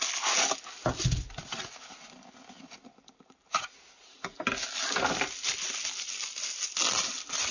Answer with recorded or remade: recorded